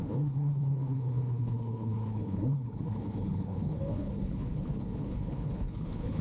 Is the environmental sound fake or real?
fake